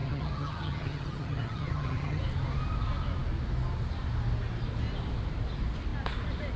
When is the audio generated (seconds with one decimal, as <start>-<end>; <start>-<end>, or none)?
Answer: 0.0-2.2